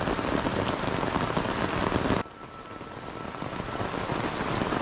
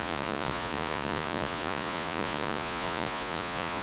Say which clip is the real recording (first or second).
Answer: first